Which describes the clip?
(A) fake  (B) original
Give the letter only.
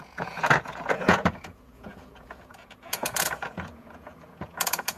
A